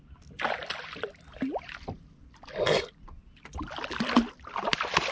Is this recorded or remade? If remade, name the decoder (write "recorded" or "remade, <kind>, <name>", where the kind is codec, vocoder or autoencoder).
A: recorded